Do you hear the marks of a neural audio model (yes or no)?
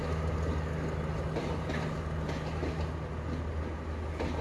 no